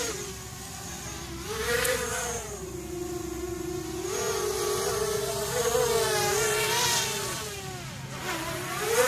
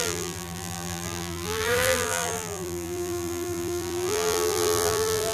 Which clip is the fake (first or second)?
second